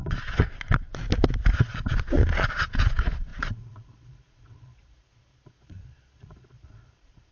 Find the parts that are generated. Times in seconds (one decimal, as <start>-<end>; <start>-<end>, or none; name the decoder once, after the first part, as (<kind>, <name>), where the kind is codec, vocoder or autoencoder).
0.0-0.9 (vocoder, Vocos); 1.6-7.3